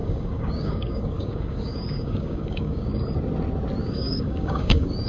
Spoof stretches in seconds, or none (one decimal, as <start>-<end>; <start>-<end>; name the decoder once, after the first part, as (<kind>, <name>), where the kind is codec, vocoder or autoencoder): 0.0-3.0 (codec, DAC); 3.8-5.1